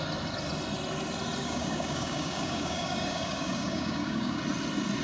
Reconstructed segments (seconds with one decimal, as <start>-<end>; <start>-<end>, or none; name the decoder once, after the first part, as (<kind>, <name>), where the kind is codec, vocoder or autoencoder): 1.4-4.4 (codec, DAC)